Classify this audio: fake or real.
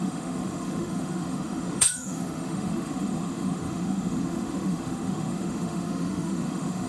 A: fake